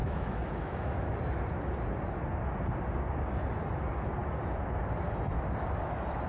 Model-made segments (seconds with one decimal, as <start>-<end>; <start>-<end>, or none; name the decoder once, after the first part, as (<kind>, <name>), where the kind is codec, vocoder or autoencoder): 0.0-1.1 (autoencoder, DAC-VAE)